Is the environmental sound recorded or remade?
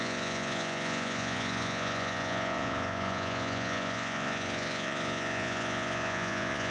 remade